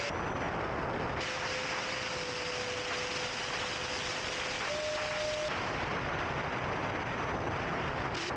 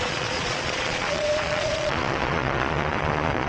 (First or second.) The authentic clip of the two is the first